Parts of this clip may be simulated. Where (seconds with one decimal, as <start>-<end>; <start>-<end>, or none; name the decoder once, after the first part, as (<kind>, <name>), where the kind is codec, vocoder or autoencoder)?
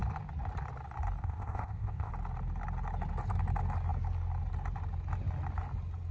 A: 1.2-2.1 (codec, ZipCodec)